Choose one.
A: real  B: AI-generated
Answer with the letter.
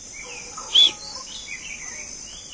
A